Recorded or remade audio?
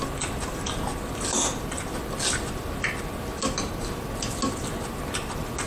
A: recorded